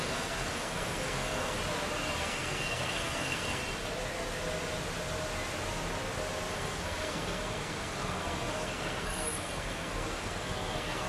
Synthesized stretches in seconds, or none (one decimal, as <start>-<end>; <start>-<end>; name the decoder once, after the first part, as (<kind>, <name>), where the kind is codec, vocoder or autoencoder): 0.0-1.6 (codec, SNAC); 2.2-3.6; 6.5-11.1